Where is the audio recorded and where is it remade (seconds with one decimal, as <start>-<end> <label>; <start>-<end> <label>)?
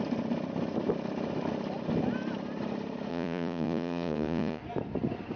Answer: 0.0-3.1 recorded; 3.1-4.6 remade; 4.6-5.4 recorded